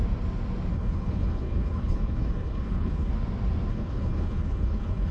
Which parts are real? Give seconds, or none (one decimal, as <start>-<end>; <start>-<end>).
0.0-0.7; 3.1-3.7